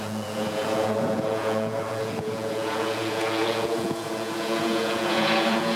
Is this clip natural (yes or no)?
no